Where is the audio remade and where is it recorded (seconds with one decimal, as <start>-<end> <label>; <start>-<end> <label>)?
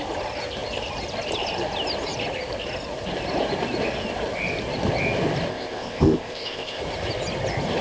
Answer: 0.0-5.5 recorded; 5.5-6.8 remade; 6.8-7.8 recorded